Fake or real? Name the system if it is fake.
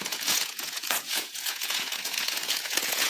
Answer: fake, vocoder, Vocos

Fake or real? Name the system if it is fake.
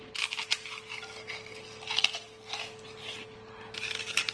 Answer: real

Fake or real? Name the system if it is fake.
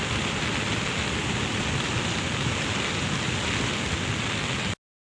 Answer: real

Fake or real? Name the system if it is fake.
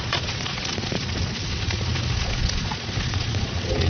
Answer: fake, vocoder, Vocos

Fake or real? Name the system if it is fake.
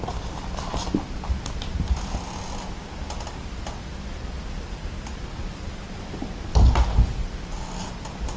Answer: real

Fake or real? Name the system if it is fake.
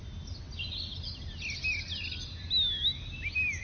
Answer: real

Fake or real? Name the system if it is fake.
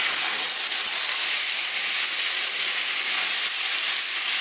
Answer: real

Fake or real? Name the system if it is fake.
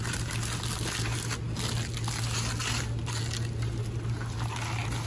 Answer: real